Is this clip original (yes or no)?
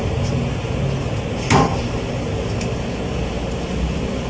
yes